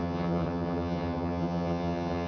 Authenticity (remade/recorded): remade